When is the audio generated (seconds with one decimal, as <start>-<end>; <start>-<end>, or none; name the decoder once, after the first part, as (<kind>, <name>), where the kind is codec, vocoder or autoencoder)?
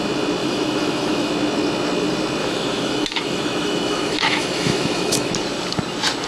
0.4-1.3 (autoencoder, DAC-VAE); 2.4-5.3